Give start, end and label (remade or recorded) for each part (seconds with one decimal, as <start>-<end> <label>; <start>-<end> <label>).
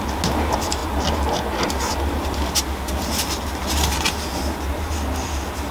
0.0-5.7 recorded